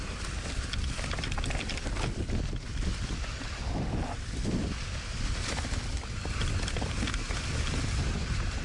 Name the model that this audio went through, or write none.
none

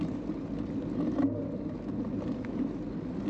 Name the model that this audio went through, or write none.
none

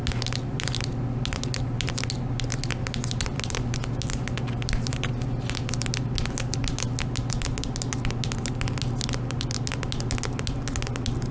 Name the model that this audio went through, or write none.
none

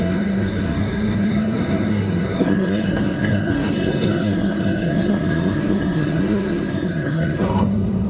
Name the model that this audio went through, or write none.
codec, SNAC